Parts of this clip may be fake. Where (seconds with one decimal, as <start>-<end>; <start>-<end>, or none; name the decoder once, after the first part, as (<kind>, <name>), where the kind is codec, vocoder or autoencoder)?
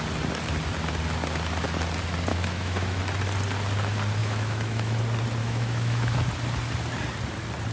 2.3-3.0 (autoencoder, DAC-VAE); 4.2-5.0; 5.4-6.2